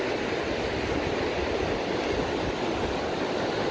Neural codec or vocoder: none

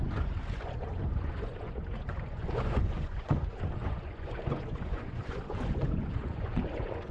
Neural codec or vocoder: vocoder, Vocos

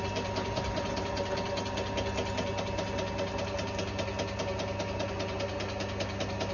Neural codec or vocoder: none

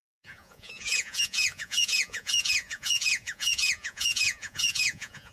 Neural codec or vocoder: vocoder, Vocos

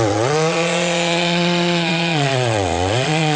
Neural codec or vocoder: vocoder, Vocos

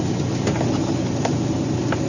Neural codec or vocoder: none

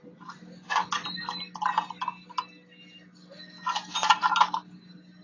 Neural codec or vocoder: none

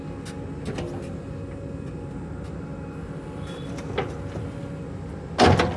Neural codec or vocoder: none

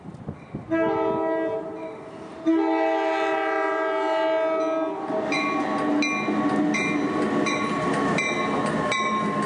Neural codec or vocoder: none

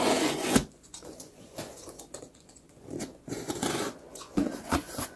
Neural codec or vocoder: vocoder, Vocos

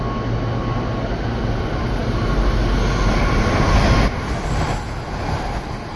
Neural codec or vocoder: none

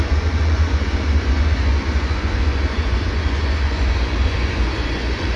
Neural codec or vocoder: vocoder, Vocos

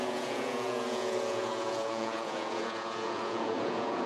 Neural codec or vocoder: vocoder, Vocos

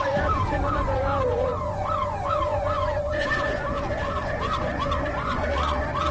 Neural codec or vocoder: vocoder, Vocos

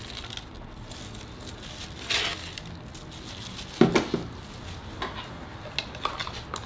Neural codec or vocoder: none